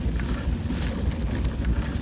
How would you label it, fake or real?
real